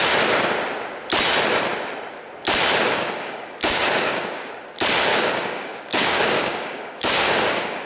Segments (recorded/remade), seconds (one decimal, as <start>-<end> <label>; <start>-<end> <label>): 0.0-2.9 recorded; 2.9-4.5 remade; 4.5-5.1 recorded; 5.1-7.9 remade